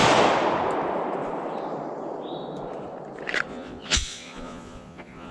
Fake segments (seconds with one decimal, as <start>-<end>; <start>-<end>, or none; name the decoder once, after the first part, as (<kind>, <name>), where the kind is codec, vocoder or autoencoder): 3.5-5.3 (vocoder, Vocos)